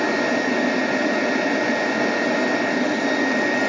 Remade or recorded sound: recorded